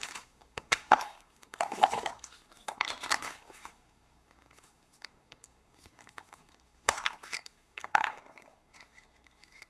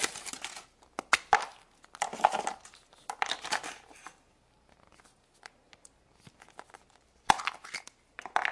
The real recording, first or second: second